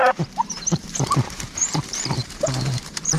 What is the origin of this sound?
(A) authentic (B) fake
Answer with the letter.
B